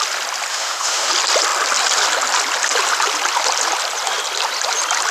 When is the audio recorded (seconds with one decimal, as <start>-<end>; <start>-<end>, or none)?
0.0-0.5; 1.1-5.1